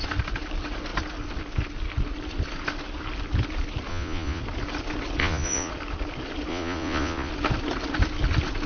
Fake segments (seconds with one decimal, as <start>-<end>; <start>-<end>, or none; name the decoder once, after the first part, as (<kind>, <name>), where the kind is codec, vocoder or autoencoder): 3.9-4.4 (vocoder, Vocos); 5.2-5.7; 6.5-7.3